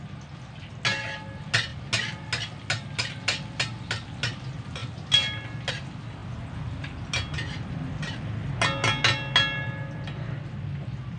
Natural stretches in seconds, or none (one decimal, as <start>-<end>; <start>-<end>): 0.0-11.2